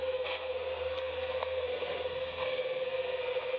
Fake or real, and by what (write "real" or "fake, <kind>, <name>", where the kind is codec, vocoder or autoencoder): fake, codec, SNAC